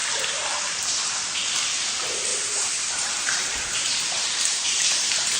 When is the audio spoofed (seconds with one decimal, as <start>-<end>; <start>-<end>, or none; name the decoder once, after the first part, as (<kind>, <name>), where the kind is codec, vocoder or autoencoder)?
2.3-5.4 (vocoder, BigVGAN v2)